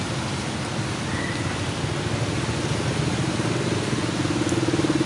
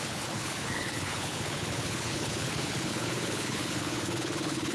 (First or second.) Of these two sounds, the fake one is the second